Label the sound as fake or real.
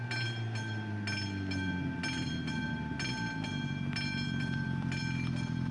real